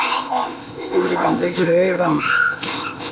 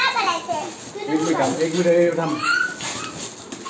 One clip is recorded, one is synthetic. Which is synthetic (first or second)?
first